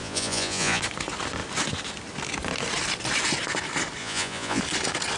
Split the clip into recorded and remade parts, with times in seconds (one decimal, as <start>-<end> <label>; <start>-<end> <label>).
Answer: 0.0-0.8 remade; 0.8-4.0 recorded; 4.0-4.6 remade; 4.6-5.2 recorded